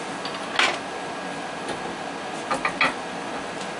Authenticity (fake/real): real